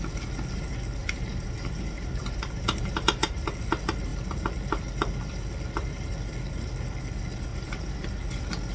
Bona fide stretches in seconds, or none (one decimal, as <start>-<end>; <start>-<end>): 0.0-1.0; 3.4-7.5; 8.1-8.7